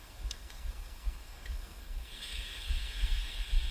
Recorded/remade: remade